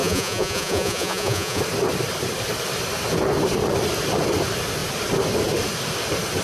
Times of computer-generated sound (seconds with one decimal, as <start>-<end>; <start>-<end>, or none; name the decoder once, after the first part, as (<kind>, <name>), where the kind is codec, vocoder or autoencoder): 0.0-1.6 (vocoder, Vocos)